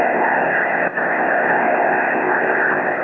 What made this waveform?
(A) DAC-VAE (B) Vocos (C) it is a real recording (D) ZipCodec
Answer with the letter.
D